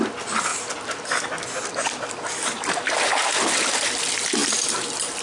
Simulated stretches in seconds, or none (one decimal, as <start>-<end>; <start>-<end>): none